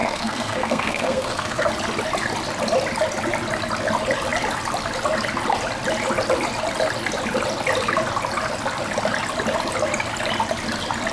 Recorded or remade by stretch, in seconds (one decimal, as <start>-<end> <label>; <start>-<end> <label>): 0.0-1.7 remade; 1.7-11.1 recorded